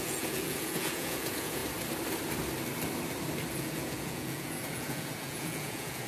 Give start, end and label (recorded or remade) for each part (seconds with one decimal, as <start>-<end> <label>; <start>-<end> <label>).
0.0-1.6 remade; 1.6-3.6 recorded; 3.6-6.1 remade